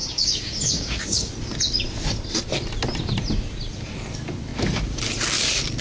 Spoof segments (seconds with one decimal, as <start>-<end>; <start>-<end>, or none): 0.0-1.3